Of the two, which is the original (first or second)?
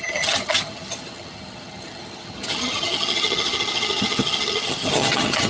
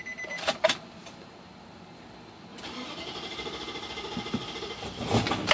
second